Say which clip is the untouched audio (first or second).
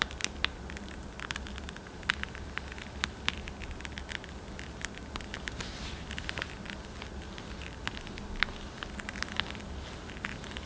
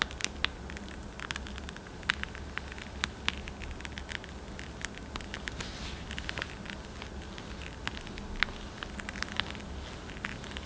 second